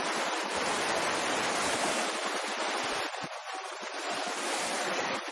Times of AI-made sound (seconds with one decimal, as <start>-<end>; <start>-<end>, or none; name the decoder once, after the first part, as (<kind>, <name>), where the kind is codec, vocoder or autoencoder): 0.0-5.3 (vocoder, BigVGAN v2)